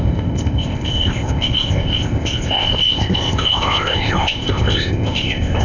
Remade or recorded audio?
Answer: remade